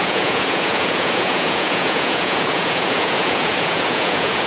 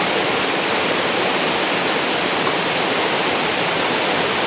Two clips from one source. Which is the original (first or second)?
second